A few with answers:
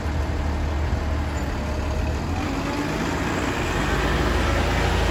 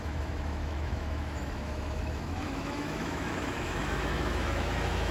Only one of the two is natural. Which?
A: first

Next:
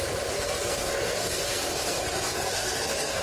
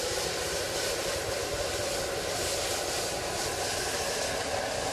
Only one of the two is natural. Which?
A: second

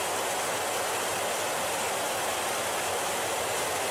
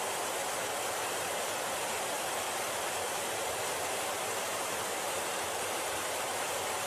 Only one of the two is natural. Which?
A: first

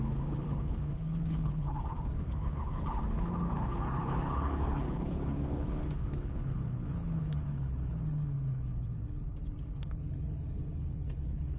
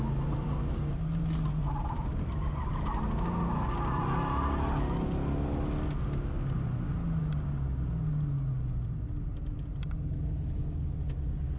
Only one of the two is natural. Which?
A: second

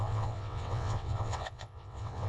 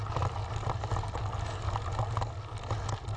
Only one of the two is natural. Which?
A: second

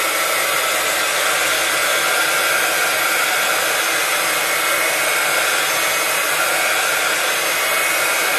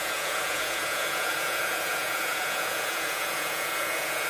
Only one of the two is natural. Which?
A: first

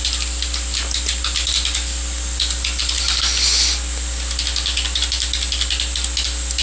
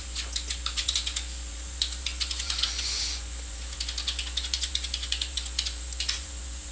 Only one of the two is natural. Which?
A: first